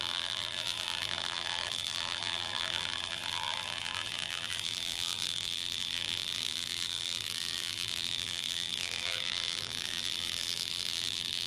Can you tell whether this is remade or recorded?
remade